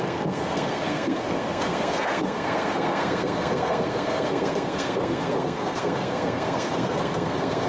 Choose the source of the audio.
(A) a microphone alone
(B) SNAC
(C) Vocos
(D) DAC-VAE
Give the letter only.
B